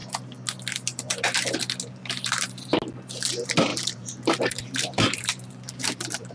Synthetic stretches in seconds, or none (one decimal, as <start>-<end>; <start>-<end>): 3.7-6.3